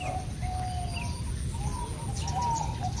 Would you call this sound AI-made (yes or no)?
no